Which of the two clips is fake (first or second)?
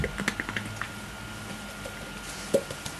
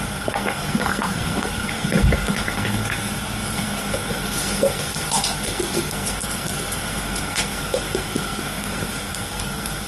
second